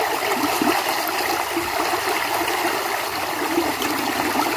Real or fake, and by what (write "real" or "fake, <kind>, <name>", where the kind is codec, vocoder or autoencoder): real